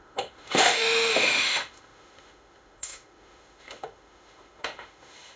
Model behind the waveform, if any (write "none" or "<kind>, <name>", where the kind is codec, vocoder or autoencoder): autoencoder, DAC-VAE